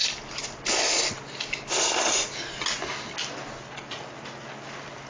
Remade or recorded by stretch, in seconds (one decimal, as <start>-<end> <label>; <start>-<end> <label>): 0.0-5.1 recorded